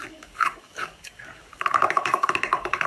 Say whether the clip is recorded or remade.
remade